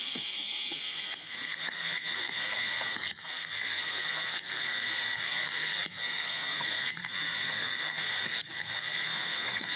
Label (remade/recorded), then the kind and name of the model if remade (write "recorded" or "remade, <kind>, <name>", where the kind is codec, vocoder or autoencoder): remade, codec, SNAC